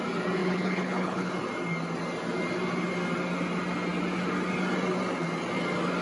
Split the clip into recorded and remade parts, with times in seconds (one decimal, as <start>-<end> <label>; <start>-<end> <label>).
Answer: 0.0-0.4 recorded; 0.4-1.3 remade; 1.3-6.0 recorded